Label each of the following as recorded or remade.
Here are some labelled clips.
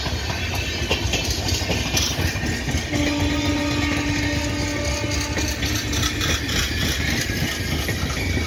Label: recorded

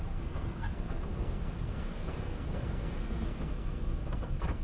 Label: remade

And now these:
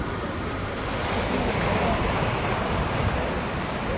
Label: recorded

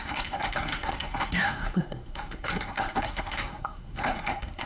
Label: remade